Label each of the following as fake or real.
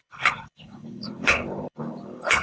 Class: fake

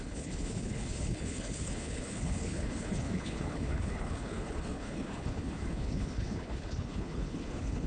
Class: fake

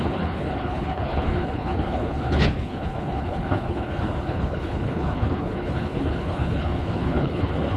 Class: fake